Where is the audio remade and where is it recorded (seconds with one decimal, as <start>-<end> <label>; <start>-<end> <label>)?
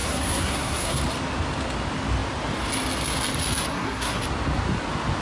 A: 0.0-1.0 remade; 1.0-3.7 recorded; 3.7-4.2 remade; 4.2-5.2 recorded